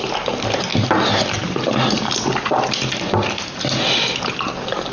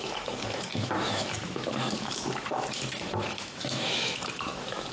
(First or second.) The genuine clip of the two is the first